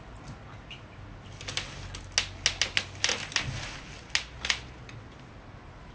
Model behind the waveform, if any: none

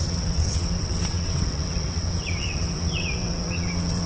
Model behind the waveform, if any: vocoder, WaveNeXt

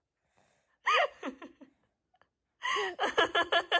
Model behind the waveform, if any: none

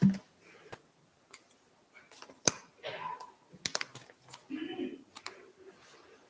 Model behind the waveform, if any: none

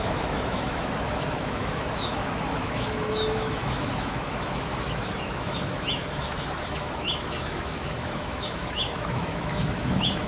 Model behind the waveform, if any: autoencoder, DAC-VAE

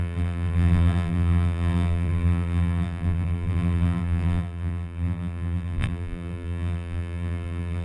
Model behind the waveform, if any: vocoder, BigVGAN v2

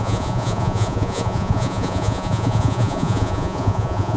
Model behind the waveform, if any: vocoder, Vocos